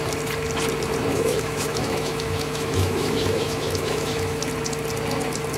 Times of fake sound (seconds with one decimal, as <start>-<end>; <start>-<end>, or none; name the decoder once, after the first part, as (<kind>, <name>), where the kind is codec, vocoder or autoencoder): 1.1-4.4 (autoencoder, DAC-VAE)